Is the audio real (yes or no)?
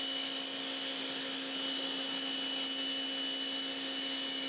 yes